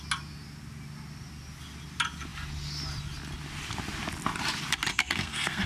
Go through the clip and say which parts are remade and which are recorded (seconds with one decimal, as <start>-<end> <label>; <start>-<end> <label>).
0.0-4.9 recorded; 4.9-5.7 remade